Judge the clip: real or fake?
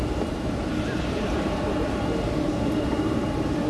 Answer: fake